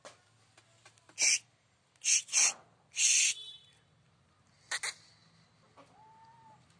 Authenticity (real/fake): real